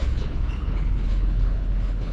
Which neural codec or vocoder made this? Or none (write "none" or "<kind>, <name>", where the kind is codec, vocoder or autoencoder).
codec, HILCodec